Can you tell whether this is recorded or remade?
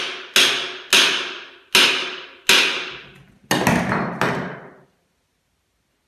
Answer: recorded